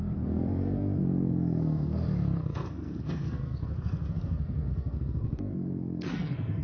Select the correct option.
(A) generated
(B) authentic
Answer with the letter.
A